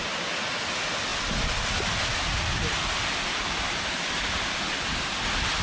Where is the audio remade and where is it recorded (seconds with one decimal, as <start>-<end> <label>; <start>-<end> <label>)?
0.0-1.1 recorded; 1.1-4.2 remade; 4.2-5.6 recorded